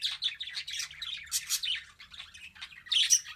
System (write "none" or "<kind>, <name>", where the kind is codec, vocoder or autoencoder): none